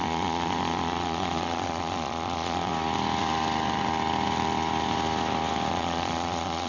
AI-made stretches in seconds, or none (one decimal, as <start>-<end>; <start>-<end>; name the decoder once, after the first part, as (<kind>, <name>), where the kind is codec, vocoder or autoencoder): 0.0-2.7 (vocoder, Vocos); 5.7-6.7